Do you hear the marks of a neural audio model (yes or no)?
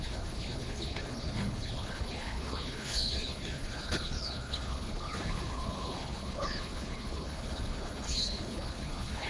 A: yes